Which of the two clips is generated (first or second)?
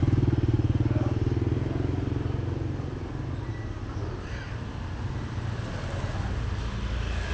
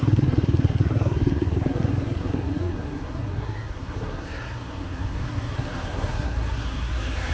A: second